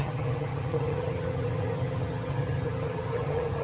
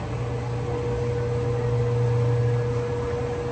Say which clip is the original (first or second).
second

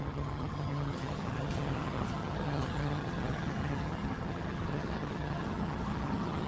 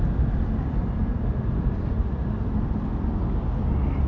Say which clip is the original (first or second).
second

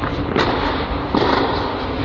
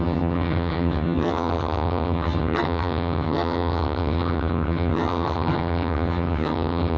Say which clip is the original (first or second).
first